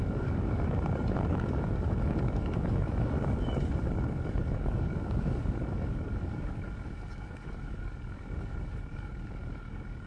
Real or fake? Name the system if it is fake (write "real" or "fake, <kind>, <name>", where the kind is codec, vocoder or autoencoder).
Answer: fake, codec, DAC